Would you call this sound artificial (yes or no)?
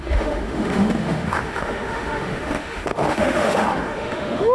yes